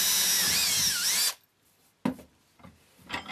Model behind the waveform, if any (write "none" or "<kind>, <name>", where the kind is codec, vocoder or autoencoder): none